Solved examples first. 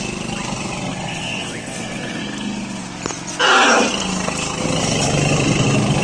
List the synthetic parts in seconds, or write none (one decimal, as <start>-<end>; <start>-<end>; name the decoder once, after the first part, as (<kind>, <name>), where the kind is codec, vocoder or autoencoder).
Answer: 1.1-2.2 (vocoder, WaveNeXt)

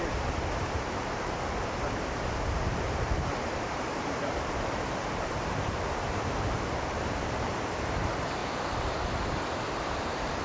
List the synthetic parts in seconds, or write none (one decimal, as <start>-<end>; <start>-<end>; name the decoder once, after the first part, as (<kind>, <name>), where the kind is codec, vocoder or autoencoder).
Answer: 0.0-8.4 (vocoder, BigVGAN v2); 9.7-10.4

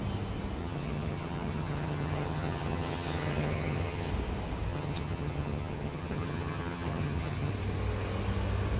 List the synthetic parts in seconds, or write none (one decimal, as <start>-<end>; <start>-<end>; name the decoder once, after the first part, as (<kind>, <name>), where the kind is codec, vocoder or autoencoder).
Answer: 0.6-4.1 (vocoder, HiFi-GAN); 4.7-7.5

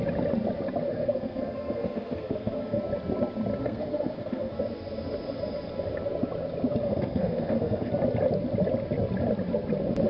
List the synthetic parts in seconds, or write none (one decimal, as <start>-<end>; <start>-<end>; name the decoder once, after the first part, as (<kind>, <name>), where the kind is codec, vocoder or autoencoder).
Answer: 0.9-2.8 (codec, SNAC); 3.6-4.6; 6.8-7.9

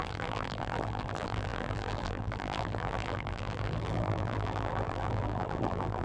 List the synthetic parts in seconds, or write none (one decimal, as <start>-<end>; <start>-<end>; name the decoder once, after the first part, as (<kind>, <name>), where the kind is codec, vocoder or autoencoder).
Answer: 0.0-6.0 (vocoder, BigVGAN v2)

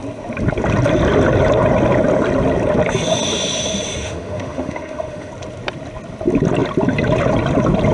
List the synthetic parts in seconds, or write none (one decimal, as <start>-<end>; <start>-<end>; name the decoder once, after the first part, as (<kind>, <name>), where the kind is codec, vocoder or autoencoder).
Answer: 4.0-5.3 (autoencoder, DAC-VAE)

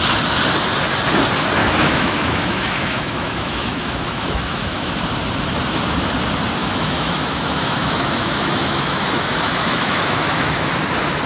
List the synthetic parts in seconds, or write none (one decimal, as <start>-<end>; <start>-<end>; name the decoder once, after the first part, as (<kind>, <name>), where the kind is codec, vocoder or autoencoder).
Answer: 1.6-4.9 (autoencoder, DAC-VAE); 6.6-10.7

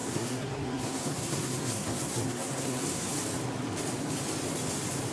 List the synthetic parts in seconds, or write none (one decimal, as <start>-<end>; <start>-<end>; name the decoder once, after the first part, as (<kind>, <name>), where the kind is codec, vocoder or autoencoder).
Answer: 0.0-3.1 (codec, SNAC)